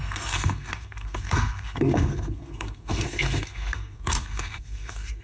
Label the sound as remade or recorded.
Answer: remade